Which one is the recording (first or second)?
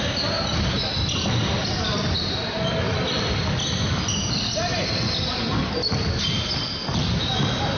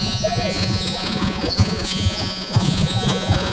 first